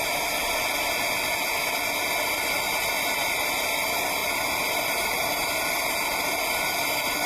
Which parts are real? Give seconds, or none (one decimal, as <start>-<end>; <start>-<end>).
0.0-4.2; 6.6-7.3